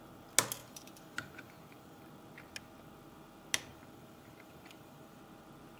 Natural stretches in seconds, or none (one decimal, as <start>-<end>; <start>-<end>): 0.0-0.6; 2.0-3.7; 5.2-5.8